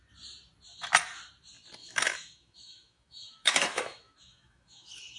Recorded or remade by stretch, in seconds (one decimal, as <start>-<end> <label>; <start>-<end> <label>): 0.0-1.8 recorded; 1.8-5.2 remade